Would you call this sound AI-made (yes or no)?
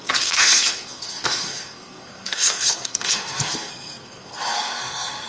yes